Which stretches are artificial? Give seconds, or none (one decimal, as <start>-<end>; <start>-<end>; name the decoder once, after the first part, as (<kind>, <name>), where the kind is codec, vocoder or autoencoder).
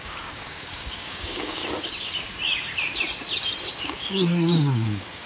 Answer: 0.0-1.6 (codec, DAC); 3.7-5.3